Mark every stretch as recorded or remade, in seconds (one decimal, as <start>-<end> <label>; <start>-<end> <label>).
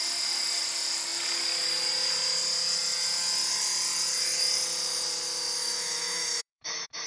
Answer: 0.0-5.6 recorded; 5.6-7.1 remade